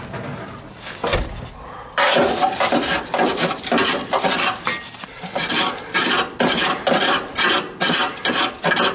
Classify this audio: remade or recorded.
recorded